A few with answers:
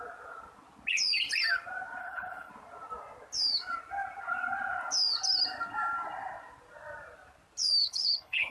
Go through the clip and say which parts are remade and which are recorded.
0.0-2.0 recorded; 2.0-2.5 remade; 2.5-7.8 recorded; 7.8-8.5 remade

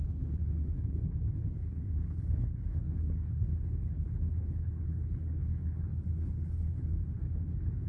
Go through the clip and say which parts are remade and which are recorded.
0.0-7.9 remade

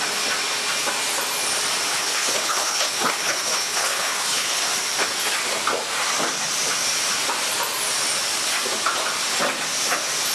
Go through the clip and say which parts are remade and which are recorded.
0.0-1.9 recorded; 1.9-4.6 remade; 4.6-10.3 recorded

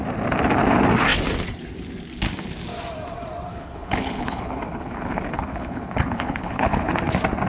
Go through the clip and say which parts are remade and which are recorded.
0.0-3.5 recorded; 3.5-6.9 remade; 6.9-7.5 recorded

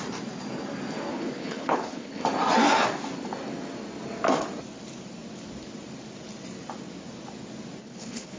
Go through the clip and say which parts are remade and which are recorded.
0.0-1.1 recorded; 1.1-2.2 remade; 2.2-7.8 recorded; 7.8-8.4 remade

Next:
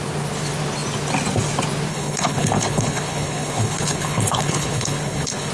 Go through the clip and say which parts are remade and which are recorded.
0.0-1.9 recorded; 1.9-5.5 remade